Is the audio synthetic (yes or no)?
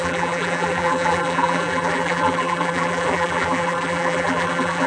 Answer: yes